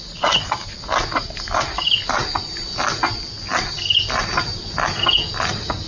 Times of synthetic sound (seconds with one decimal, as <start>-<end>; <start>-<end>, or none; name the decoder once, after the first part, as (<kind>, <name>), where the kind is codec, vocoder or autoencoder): none